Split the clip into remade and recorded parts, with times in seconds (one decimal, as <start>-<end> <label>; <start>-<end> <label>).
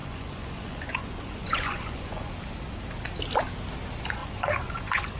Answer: 0.0-2.3 remade; 2.3-4.2 recorded; 4.2-5.2 remade